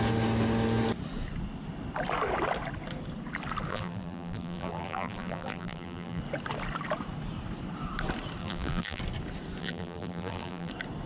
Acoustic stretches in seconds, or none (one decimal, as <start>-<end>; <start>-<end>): 0.0-3.7; 6.2-8.4; 9.0-9.6; 10.7-11.1